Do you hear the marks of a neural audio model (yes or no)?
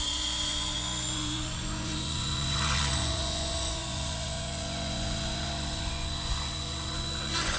yes